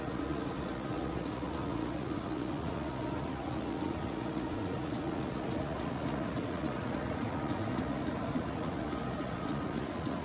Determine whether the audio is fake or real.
fake